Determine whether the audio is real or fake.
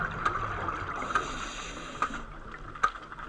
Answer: real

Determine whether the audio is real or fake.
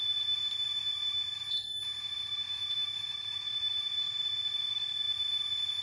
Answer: fake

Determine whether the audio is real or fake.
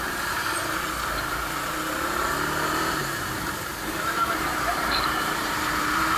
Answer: fake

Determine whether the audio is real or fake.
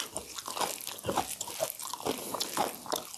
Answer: real